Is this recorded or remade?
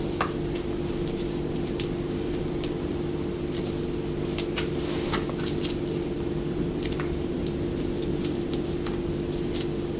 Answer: remade